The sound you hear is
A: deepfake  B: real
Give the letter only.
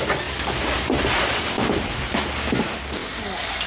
B